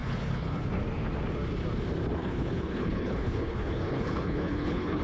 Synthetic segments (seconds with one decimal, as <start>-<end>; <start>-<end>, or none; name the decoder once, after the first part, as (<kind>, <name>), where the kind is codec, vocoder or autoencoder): 0.0-0.7 (codec, HILCodec); 2.2-5.0